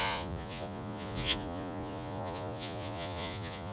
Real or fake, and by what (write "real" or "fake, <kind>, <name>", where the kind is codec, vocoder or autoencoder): fake, vocoder, Vocos